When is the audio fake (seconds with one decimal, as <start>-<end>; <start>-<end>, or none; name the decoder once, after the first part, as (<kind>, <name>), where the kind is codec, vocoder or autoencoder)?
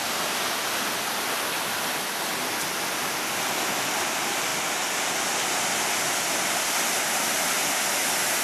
none